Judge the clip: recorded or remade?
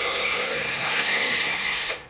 remade